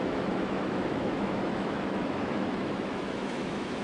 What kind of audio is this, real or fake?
fake